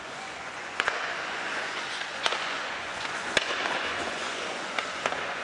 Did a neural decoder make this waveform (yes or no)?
yes